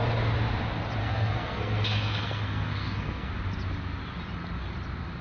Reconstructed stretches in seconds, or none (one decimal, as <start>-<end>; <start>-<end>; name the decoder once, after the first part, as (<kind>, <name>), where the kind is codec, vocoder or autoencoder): 1.0-3.3 (codec, SNAC)